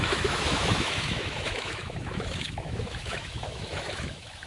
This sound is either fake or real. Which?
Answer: fake